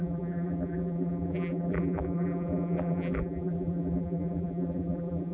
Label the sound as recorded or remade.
remade